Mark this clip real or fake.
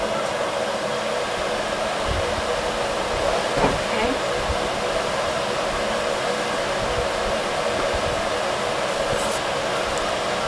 real